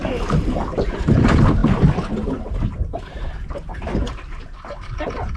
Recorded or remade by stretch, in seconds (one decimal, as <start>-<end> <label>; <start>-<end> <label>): 0.0-5.4 recorded